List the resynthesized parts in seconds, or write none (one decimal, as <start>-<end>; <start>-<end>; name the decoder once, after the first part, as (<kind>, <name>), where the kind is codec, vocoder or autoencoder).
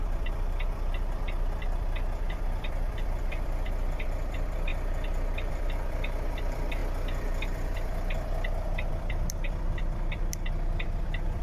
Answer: 0.0-4.7 (vocoder, BigVGAN v2); 5.5-11.4